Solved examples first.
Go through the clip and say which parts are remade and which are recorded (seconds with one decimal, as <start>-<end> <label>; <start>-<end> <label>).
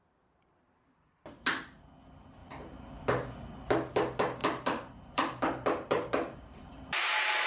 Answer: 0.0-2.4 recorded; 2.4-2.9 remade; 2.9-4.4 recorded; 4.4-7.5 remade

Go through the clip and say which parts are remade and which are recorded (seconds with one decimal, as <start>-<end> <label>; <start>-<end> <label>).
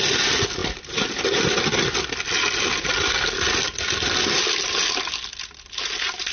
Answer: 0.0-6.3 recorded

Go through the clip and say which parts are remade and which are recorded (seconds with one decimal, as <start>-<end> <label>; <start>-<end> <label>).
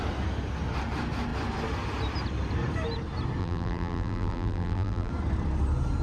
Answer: 0.0-3.4 recorded; 3.4-5.1 remade; 5.1-6.0 recorded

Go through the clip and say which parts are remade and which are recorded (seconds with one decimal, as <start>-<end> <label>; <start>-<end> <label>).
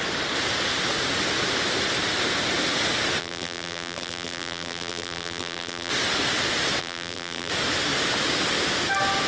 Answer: 0.0-3.2 recorded; 3.2-5.9 remade; 5.9-6.8 recorded; 6.8-7.5 remade; 7.5-9.3 recorded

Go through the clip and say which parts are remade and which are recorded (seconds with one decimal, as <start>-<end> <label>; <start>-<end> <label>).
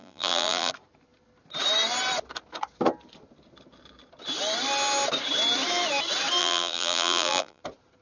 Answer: 0.0-0.7 remade; 0.7-6.4 recorded; 6.4-7.6 remade; 7.6-8.0 recorded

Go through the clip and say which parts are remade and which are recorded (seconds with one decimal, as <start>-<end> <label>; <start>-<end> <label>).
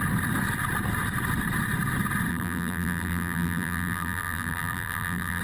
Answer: 0.0-2.3 recorded; 2.3-5.4 remade